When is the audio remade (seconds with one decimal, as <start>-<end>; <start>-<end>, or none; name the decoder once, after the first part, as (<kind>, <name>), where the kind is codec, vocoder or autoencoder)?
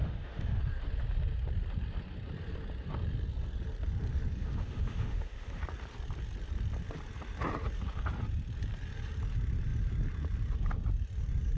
0.0-0.6 (autoencoder, DAC-VAE); 4.4-5.6